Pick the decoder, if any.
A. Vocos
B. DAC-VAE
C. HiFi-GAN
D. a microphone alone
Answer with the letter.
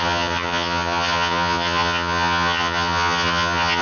C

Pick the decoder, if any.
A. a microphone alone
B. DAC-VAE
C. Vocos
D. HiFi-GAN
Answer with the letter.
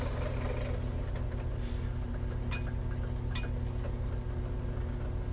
A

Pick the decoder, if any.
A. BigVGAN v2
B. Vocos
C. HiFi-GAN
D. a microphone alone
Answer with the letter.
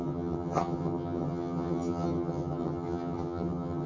C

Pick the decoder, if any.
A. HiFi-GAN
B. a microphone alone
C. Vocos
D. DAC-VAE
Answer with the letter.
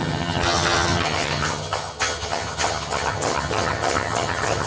A